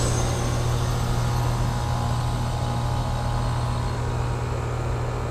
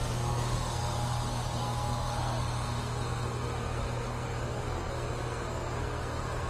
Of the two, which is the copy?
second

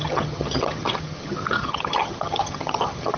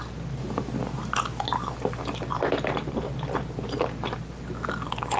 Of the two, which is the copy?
first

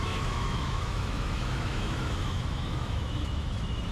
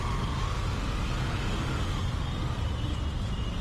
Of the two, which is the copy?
first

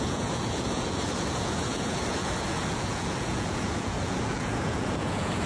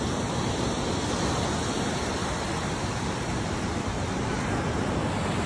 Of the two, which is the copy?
first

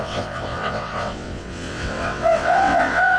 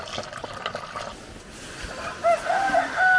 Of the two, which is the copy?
first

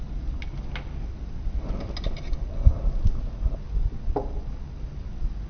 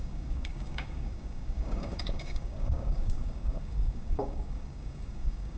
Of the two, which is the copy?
second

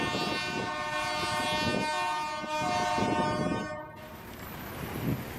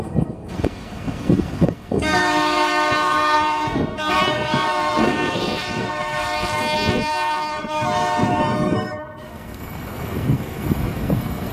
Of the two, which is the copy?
second